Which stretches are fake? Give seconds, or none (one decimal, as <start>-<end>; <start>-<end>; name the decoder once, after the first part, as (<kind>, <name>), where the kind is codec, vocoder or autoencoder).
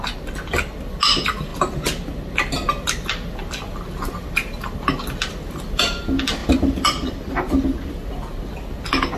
6.4-8.0 (vocoder, BigVGAN v2)